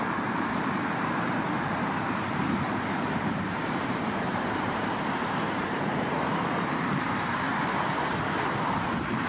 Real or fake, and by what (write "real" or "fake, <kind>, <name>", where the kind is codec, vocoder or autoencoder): fake, vocoder, BigVGAN v2